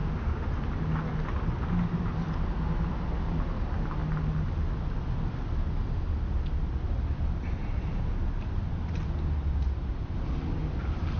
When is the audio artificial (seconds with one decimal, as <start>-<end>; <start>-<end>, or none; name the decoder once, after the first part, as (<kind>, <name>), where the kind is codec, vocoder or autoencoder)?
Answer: 0.0-0.5 (autoencoder, DAC-VAE)